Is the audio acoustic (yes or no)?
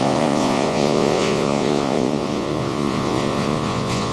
no